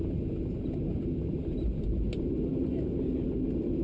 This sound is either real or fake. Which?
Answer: real